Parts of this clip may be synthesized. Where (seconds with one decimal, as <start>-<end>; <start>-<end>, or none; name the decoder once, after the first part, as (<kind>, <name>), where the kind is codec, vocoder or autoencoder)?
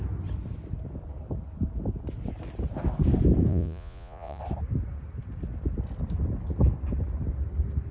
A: 3.5-4.4 (vocoder, Vocos)